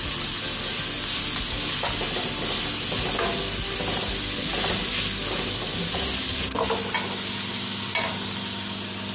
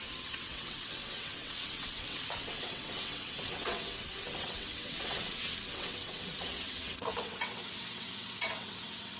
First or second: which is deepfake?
second